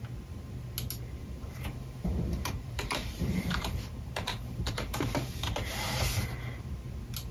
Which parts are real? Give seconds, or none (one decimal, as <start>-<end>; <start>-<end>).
0.0-1.2; 5.6-7.3